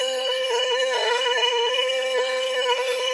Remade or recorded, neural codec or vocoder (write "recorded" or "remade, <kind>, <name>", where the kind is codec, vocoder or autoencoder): remade, codec, SNAC